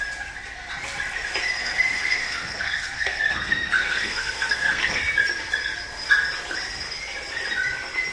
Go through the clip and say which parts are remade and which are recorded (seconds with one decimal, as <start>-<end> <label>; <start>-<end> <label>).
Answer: 0.0-1.5 recorded; 1.5-5.0 remade; 5.0-8.1 recorded